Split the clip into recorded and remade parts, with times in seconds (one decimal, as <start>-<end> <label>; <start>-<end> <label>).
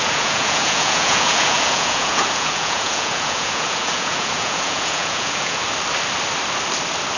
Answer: 0.0-5.6 remade; 5.6-7.2 recorded